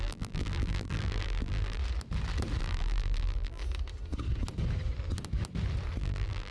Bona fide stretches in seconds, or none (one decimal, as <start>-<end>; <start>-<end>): 1.8-2.6; 3.6-6.0